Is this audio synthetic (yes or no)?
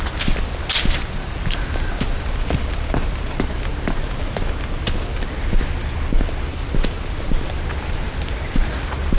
no